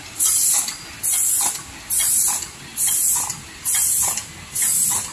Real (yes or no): yes